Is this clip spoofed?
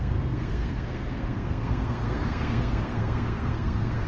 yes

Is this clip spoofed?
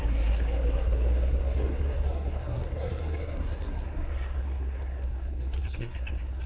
yes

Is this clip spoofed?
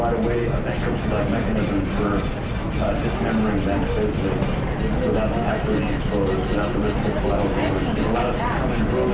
no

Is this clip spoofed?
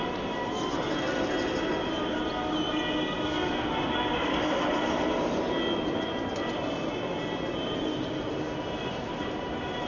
no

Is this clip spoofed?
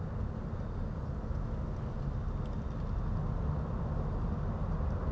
no